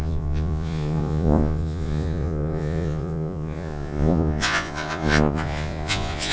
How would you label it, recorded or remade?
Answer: remade